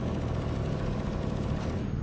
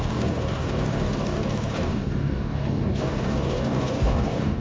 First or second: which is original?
first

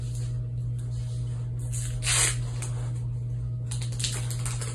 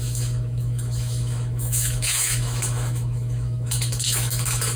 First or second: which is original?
first